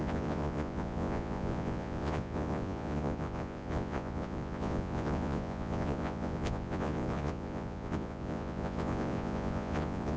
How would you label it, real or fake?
fake